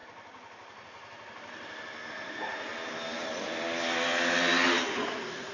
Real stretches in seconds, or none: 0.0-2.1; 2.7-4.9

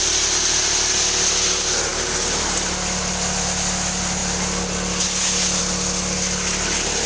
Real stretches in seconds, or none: 0.0-7.1

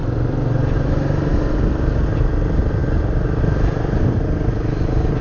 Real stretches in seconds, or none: 0.0-5.2

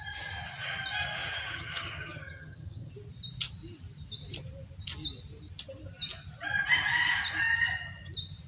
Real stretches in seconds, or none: 0.0-1.2; 2.9-8.5